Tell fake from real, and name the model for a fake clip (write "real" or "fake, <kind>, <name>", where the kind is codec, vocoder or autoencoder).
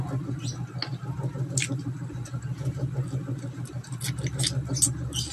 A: real